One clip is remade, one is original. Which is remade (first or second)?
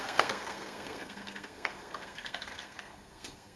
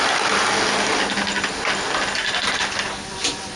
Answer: first